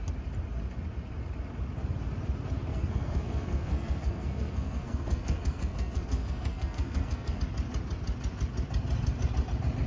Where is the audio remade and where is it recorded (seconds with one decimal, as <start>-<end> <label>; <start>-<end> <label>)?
0.0-2.7 recorded; 2.7-7.4 remade; 7.4-9.9 recorded